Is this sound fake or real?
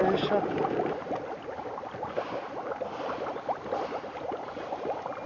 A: real